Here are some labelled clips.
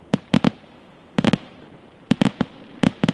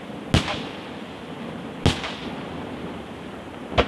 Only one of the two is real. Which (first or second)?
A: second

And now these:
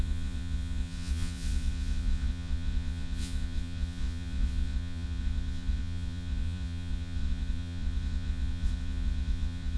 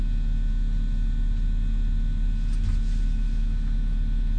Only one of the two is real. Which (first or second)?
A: second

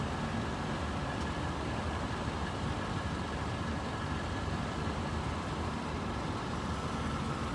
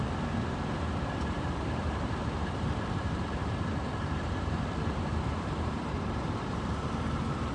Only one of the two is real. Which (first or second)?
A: first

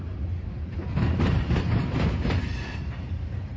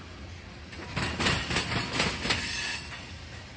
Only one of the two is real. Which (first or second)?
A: second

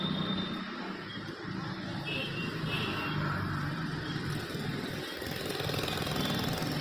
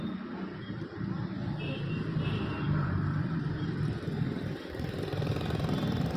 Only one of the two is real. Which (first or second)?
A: first